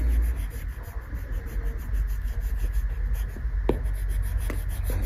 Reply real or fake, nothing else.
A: real